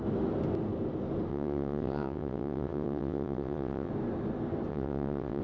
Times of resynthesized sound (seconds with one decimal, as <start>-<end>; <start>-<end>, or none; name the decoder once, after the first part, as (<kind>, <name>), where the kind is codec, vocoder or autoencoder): 1.3-3.9 (vocoder, WaveNeXt); 4.7-5.4